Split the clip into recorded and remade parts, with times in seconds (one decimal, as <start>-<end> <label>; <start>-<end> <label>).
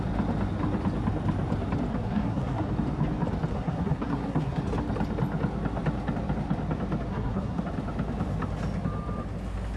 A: 0.0-1.9 recorded; 1.9-2.7 remade; 2.7-3.5 recorded; 3.5-4.6 remade; 4.6-7.1 recorded; 7.1-7.6 remade; 7.6-9.8 recorded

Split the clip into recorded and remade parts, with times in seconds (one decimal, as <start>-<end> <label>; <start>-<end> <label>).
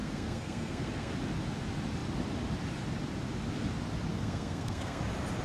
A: 0.0-1.1 remade; 1.1-4.1 recorded; 4.1-5.0 remade; 5.0-5.4 recorded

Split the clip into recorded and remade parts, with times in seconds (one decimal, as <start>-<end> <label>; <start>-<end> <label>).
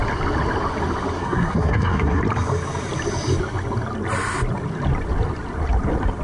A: 0.0-1.2 recorded; 1.2-2.2 remade; 2.2-6.2 recorded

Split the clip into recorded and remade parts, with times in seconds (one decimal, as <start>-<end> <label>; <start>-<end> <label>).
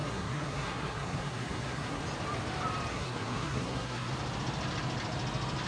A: 0.0-2.0 remade; 2.0-2.9 recorded; 2.9-4.1 remade; 4.1-5.7 recorded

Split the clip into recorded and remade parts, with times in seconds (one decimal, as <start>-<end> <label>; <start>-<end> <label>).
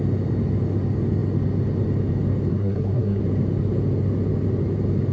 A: 0.0-2.5 recorded; 2.5-3.2 remade; 3.2-5.1 recorded